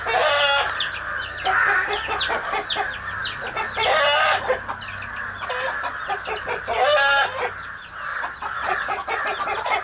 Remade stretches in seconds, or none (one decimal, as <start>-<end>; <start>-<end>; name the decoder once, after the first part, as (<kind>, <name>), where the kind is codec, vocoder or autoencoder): 8.1-9.2 (vocoder, Vocos)